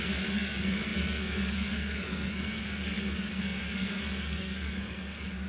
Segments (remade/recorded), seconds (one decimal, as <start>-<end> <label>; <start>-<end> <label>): 0.0-5.5 remade